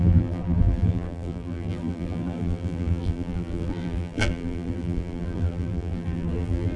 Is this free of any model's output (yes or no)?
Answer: no